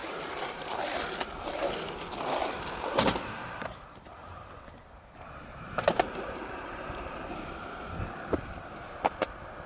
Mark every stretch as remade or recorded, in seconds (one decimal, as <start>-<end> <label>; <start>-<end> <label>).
0.0-1.0 remade; 1.0-2.4 recorded; 2.4-7.7 remade; 7.7-9.7 recorded